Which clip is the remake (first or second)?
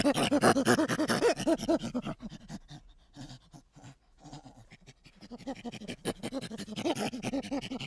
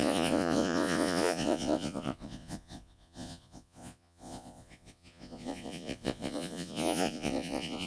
second